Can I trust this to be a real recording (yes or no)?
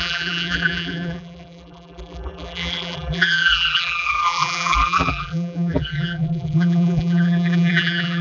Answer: no